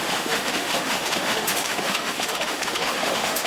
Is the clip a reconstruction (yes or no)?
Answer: yes